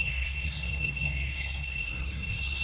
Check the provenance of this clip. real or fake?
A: fake